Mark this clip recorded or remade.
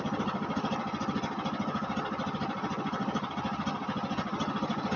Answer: recorded